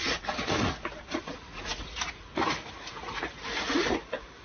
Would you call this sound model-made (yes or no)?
yes